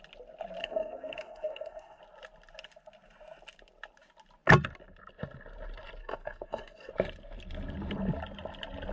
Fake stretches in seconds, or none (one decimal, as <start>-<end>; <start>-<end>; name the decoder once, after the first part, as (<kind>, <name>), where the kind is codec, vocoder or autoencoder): 0.6-2.0 (codec, SNAC); 6.0-6.9